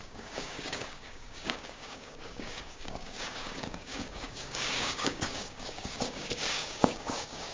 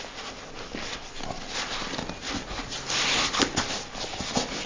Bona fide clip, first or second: second